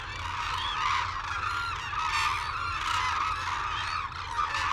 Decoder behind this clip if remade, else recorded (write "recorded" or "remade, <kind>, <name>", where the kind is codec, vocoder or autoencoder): recorded